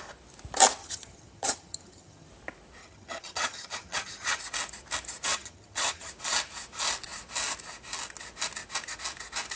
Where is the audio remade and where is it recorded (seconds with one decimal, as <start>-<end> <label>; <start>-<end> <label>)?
0.0-0.8 recorded; 0.8-2.3 remade; 2.3-2.8 recorded; 2.8-4.4 remade; 4.4-5.3 recorded; 5.3-6.1 remade; 6.1-9.6 recorded